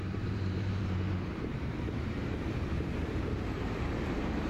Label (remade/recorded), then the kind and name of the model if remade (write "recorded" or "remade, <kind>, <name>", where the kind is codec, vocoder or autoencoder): remade, vocoder, BigVGAN v2